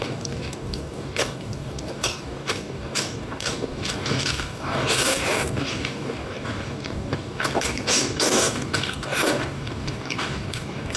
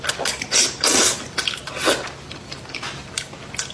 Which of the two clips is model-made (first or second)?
first